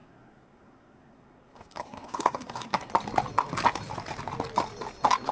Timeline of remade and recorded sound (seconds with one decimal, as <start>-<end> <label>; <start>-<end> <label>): 0.0-2.9 remade; 2.9-5.3 recorded